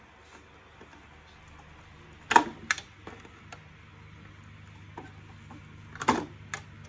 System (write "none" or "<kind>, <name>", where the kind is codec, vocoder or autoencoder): none